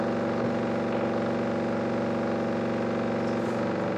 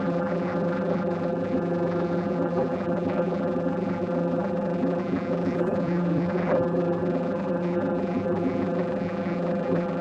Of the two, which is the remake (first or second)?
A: second